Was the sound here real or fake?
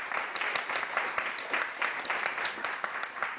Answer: real